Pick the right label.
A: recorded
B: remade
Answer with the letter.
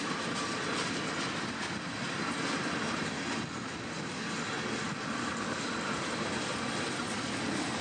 A